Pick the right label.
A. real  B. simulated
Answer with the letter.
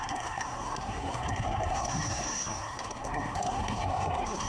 B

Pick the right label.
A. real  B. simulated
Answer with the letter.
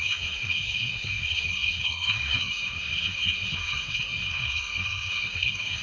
B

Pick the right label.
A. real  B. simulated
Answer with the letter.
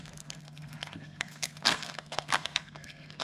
B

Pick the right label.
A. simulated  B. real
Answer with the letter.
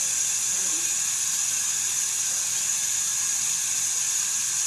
B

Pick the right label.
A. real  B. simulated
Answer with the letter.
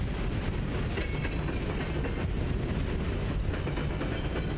A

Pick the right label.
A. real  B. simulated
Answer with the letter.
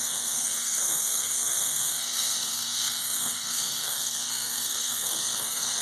B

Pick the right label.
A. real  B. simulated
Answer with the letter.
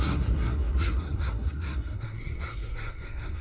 B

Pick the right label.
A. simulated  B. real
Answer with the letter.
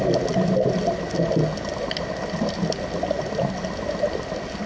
B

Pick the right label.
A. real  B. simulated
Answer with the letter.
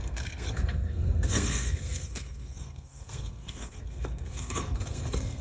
B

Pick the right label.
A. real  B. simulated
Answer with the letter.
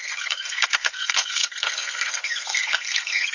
B